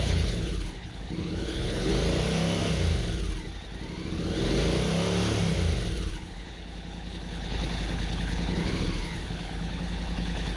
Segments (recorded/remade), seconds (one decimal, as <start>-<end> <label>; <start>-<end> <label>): 0.0-1.9 remade; 1.9-6.1 recorded; 6.1-10.6 remade